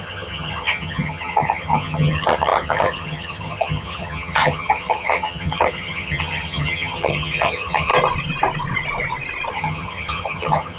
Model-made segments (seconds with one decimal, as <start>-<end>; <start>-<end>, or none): 0.0-7.9; 9.5-10.8